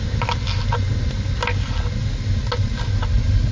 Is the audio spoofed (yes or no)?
no